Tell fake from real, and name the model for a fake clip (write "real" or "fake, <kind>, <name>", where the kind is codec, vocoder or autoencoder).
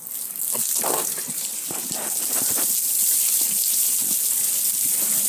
real